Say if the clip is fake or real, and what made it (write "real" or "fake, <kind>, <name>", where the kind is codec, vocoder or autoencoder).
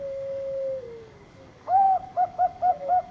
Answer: fake, codec, DAC